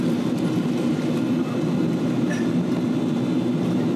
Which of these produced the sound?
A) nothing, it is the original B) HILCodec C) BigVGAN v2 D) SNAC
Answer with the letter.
A